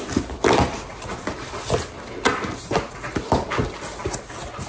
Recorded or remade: recorded